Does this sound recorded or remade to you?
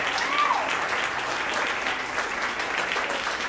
recorded